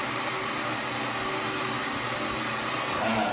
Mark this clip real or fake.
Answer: real